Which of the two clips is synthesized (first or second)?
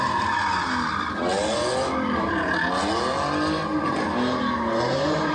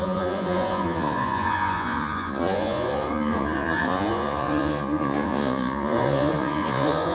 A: second